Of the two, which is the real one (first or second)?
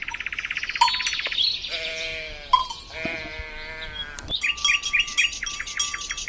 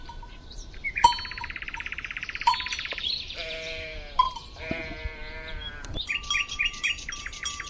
first